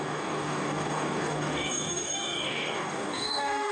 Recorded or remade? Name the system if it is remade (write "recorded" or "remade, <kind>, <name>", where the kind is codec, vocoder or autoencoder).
remade, codec, DAC